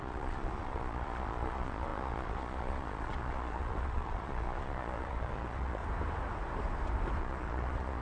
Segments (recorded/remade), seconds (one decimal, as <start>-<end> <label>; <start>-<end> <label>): 0.0-5.8 remade; 5.8-7.2 recorded; 7.2-8.0 remade